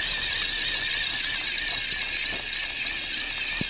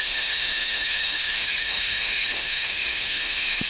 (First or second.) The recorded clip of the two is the first